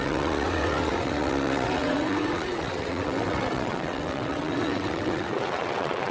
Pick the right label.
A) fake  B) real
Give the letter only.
A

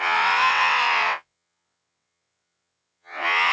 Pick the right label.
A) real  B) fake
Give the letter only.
B